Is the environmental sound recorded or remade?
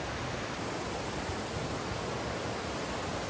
recorded